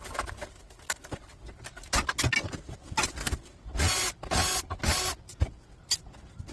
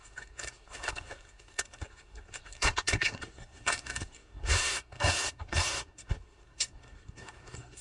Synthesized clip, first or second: second